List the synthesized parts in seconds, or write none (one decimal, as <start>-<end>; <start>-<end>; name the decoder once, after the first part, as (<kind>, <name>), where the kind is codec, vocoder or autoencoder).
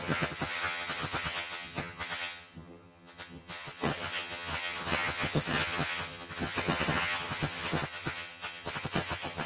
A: 0.0-9.5 (vocoder, HiFi-GAN)